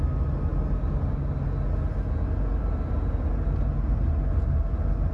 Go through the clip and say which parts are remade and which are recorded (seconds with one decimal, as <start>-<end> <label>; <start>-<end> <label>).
0.0-5.1 recorded